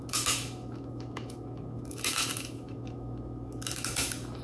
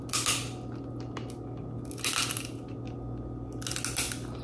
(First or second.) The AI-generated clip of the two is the first